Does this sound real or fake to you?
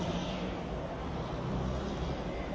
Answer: real